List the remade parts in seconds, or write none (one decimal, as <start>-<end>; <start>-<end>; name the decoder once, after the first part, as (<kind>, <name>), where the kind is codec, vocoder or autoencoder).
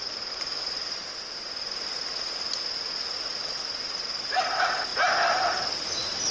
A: none